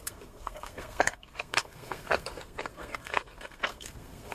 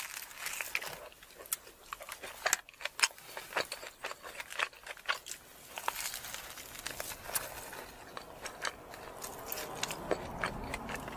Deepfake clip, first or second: first